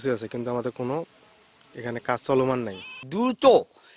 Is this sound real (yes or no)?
yes